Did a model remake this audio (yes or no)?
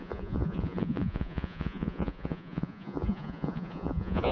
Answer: yes